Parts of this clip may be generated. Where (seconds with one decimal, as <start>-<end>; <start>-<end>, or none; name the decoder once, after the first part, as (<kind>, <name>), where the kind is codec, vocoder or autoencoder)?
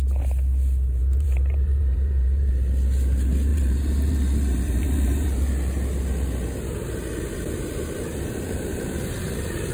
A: 1.0-2.5 (vocoder, BigVGAN v2); 3.5-5.5